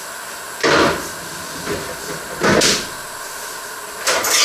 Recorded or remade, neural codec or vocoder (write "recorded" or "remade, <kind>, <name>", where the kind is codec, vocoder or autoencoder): recorded